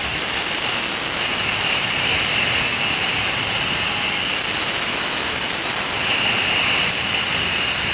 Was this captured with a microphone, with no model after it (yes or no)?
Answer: yes